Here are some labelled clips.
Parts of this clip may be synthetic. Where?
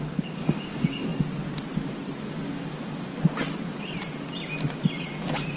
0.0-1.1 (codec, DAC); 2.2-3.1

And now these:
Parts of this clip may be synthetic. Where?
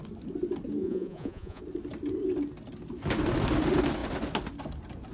0.8-1.6 (vocoder, Vocos)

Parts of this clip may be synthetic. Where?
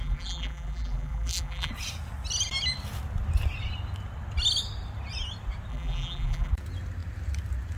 0.0-1.7 (vocoder, BigVGAN v2); 5.7-6.5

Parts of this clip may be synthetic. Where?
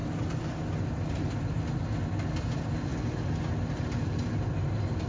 0.0-1.4 (vocoder, BigVGAN v2)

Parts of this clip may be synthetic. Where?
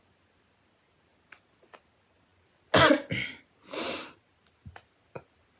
none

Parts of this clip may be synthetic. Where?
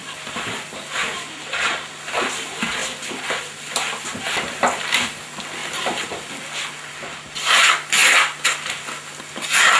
none